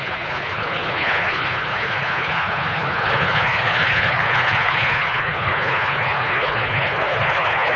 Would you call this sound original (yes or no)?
no